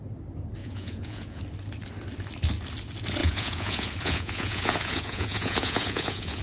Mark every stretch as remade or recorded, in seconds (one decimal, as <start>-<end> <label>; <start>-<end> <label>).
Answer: 0.0-0.6 recorded; 0.6-1.4 remade; 1.4-3.2 recorded; 3.2-6.4 remade